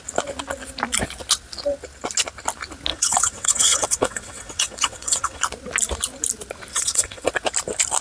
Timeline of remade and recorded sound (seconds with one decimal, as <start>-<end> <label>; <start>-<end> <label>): 0.0-2.9 recorded; 2.9-5.4 remade; 5.4-6.7 recorded; 6.7-7.3 remade; 7.3-8.0 recorded